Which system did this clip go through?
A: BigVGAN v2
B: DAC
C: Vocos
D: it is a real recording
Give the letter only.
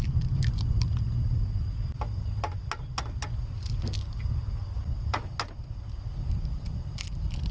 D